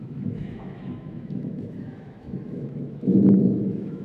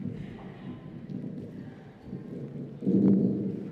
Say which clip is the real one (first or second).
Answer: second